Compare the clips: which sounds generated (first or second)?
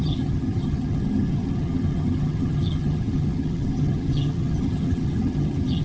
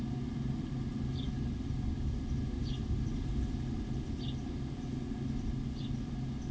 first